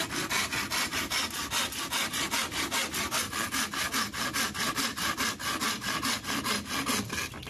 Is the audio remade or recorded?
recorded